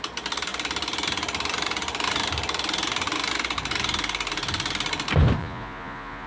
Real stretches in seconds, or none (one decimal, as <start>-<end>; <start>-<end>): 0.0-5.4